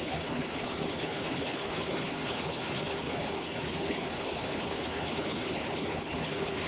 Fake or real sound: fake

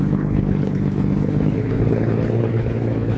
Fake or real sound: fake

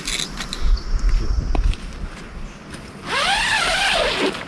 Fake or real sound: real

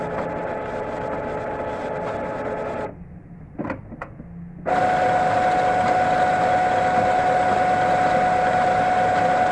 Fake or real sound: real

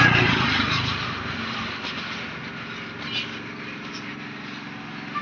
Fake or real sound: real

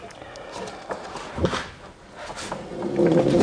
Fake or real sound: real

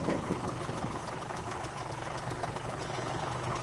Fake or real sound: fake